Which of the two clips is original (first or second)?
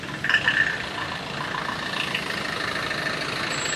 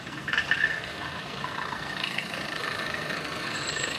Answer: first